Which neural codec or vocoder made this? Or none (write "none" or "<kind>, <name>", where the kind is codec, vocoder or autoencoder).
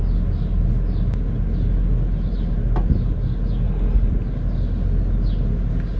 none